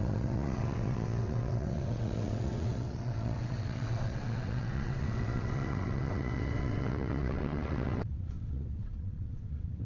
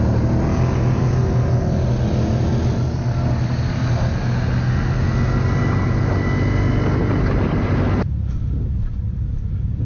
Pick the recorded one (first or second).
second